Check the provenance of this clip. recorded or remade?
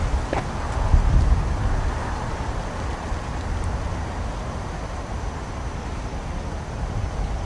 recorded